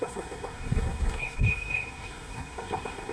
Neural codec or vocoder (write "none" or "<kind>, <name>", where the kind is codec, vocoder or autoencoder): codec, SNAC